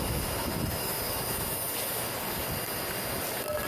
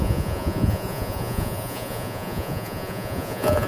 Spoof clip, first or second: second